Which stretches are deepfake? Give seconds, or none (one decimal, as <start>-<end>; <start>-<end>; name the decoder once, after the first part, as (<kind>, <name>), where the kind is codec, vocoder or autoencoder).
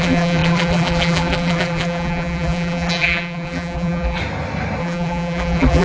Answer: 0.0-4.2 (vocoder, BigVGAN v2); 4.8-5.8